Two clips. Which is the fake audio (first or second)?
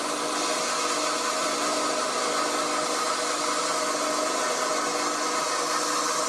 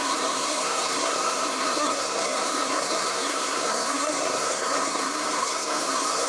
second